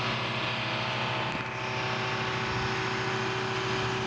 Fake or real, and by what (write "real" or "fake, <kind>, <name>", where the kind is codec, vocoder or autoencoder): real